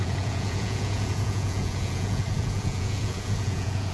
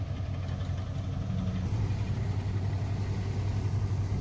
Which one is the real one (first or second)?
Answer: second